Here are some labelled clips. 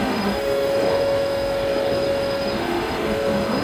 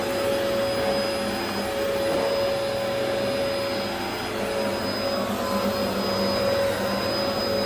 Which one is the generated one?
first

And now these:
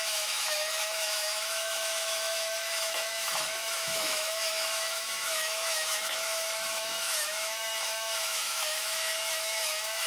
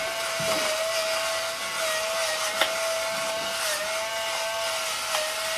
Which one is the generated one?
first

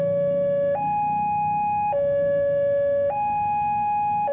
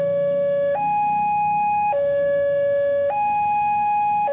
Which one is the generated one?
second